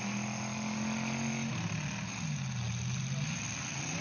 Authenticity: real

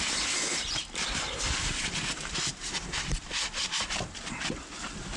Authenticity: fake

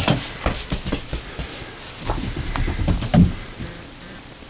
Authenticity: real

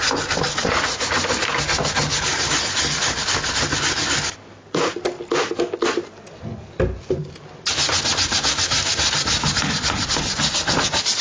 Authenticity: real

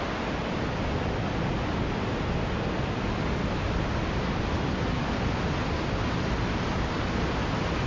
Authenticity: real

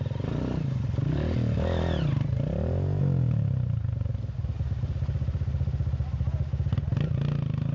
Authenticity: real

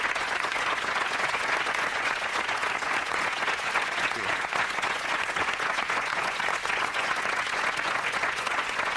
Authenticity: fake